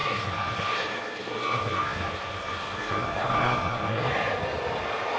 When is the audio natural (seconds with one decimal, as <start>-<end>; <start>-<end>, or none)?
4.1-5.2